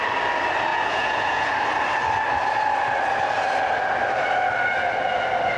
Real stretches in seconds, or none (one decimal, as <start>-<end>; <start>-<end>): 0.0-0.7; 1.5-5.6